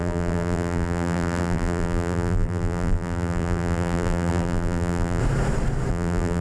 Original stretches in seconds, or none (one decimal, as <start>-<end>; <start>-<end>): 5.2-5.9